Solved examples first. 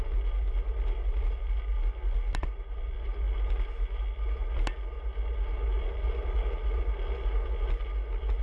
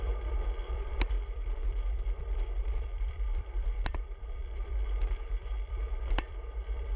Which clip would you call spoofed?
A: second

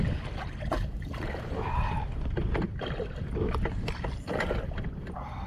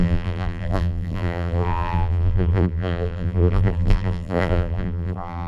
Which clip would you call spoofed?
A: second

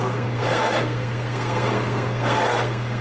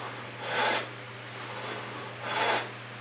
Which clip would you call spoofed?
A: first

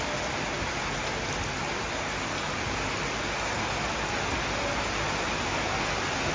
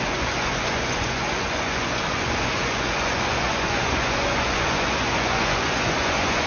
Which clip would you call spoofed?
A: second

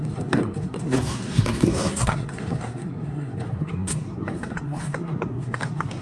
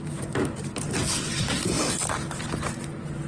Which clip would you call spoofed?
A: first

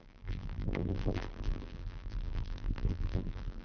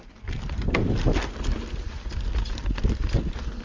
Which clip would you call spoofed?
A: first